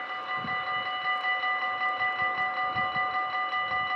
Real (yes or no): yes